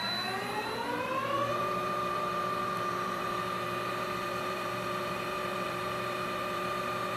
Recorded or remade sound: remade